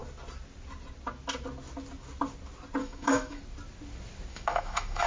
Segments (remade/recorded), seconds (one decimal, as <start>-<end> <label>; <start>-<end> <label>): 0.0-2.8 recorded; 2.8-3.4 remade; 3.4-4.3 recorded; 4.3-5.1 remade

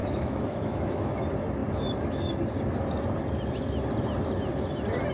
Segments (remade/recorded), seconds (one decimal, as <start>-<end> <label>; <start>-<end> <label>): 0.0-1.2 remade; 1.2-5.1 recorded